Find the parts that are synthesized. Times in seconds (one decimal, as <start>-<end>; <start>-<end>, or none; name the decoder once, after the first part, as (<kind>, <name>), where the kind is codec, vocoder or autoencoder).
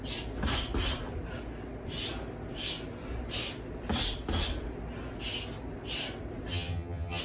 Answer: 6.5-7.2 (vocoder, HiFi-GAN)